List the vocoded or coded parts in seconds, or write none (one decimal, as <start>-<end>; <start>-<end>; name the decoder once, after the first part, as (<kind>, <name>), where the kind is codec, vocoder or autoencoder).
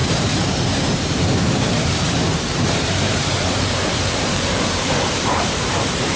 0.0-6.2 (vocoder, BigVGAN v2)